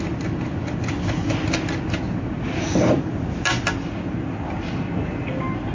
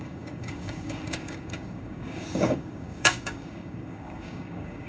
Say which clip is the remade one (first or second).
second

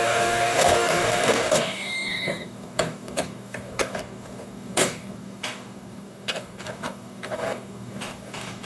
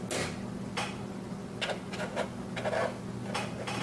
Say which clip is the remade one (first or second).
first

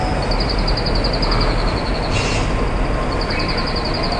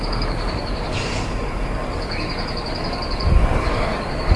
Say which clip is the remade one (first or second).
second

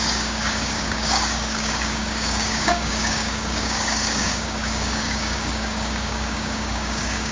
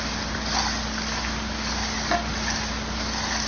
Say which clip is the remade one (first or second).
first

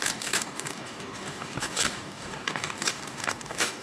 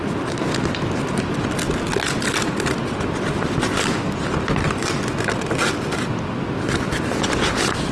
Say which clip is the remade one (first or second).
first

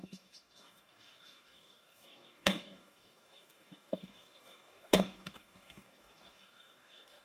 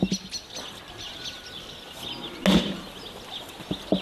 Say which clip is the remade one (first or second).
first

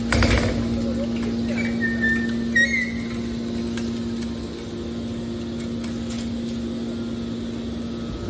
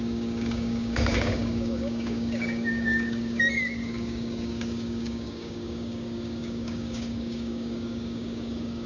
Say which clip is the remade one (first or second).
second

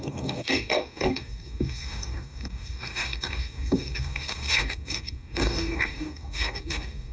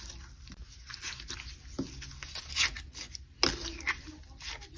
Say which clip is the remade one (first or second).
first